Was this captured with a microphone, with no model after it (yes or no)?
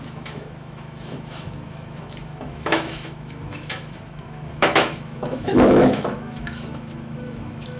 no